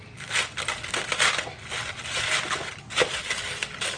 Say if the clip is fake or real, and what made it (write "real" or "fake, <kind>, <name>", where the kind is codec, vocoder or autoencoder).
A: real